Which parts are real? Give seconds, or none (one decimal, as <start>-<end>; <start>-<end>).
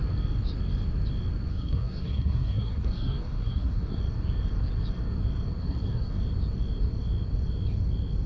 0.0-1.5; 4.0-5.6; 6.2-8.3